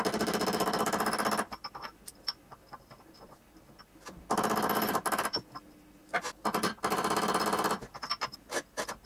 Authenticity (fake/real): real